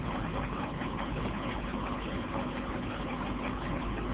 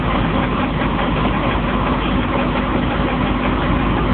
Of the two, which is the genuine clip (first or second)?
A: second